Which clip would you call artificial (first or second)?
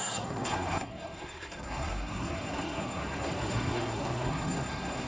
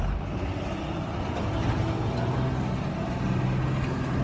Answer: first